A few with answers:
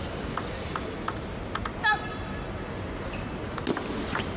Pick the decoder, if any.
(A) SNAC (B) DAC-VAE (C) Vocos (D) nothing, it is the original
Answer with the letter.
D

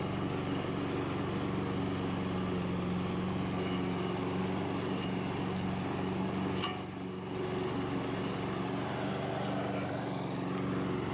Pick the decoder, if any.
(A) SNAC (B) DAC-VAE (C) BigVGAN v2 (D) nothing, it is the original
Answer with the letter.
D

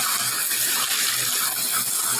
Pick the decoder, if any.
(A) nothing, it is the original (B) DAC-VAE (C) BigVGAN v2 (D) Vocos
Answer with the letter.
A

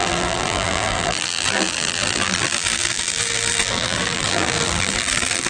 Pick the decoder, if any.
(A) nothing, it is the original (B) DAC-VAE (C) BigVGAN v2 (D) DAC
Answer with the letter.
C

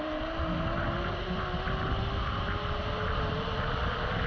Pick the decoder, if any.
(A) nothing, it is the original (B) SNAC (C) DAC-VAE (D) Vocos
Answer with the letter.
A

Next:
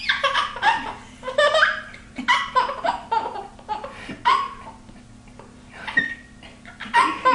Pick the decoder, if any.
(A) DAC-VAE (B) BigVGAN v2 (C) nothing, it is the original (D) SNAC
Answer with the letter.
C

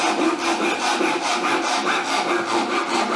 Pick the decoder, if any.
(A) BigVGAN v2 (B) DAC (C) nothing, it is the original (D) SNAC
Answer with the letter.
C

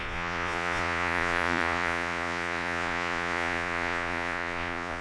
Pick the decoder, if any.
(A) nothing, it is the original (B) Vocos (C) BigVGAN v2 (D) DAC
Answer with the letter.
B